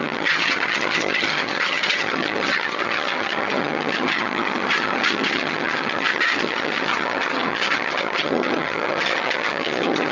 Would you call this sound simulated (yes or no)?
yes